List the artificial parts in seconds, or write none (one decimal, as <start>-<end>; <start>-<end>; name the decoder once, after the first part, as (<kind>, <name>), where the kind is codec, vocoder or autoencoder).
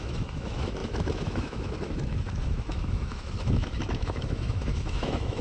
0.0-5.4 (autoencoder, DAC-VAE)